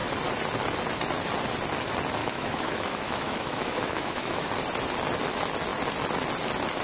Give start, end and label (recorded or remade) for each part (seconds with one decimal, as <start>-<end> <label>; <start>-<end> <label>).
0.0-2.2 recorded; 2.2-4.5 remade; 4.5-6.8 recorded